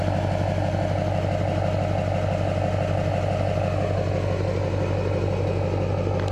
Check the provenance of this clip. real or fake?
real